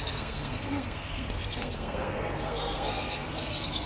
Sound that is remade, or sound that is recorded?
remade